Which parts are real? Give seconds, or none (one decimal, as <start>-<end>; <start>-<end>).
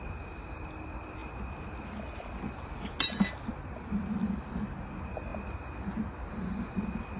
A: 0.0-7.2